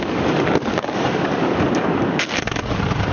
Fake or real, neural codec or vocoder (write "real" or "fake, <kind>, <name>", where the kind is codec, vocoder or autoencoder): fake, codec, DAC